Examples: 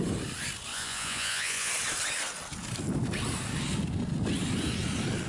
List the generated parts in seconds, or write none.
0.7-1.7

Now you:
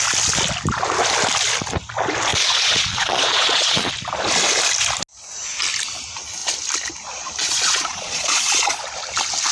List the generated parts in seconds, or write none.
2.3-3.9; 7.4-8.8

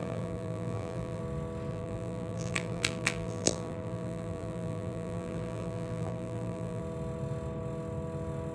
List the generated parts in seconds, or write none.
0.0-1.2; 1.7-6.8

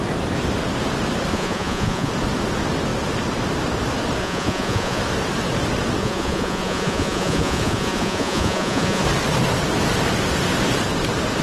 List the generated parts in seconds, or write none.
1.3-2.1; 4.2-5.0; 6.0-9.0

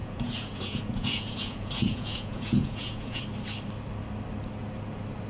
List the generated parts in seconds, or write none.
0.0-3.2

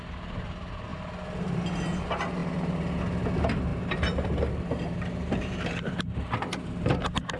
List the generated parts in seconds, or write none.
0.9-1.6; 3.7-7.4

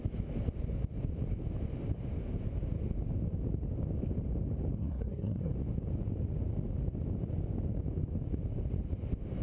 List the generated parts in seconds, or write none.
4.8-5.5

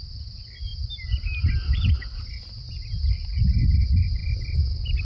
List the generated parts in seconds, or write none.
none